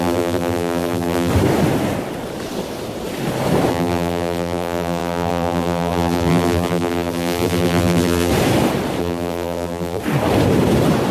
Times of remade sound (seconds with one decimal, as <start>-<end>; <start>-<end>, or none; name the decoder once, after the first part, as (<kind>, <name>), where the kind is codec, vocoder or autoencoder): 0.0-1.3 (vocoder, BigVGAN v2); 3.7-8.3; 9.0-10.0